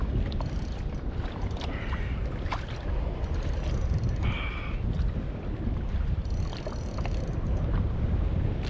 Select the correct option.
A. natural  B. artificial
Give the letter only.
A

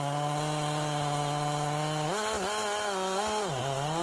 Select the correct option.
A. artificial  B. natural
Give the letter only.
B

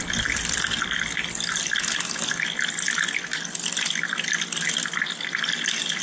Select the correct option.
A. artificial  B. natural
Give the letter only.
B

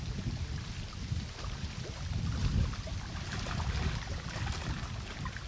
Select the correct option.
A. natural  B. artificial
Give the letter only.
A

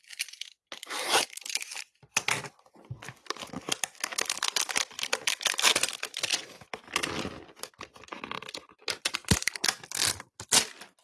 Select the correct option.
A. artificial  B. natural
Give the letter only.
B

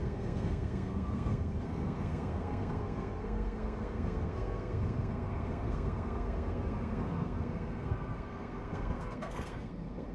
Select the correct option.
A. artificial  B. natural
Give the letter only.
A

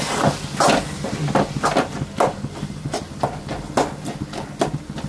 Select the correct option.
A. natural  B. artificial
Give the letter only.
A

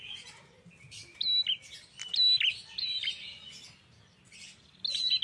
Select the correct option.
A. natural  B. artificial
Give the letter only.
A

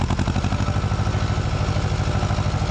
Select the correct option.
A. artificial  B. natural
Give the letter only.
B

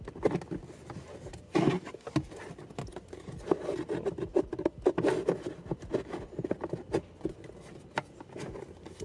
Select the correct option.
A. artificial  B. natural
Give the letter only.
B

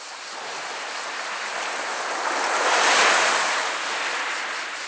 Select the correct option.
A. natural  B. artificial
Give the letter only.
A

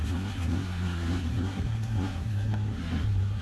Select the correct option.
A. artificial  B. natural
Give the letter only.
A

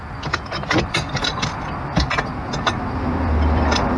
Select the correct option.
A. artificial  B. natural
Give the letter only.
B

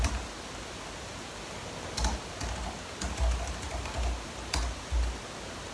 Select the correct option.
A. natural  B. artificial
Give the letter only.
A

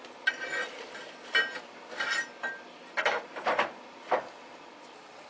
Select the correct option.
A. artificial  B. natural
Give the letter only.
B